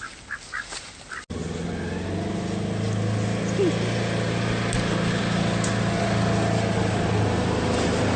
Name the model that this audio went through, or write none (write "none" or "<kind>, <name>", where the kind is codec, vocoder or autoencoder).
none